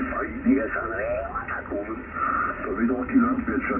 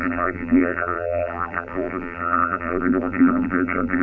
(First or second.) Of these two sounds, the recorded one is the first